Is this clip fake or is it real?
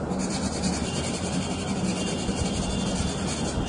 real